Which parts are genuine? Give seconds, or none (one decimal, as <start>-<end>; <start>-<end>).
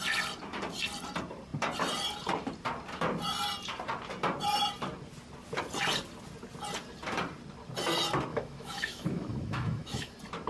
0.0-8.3; 10.1-10.5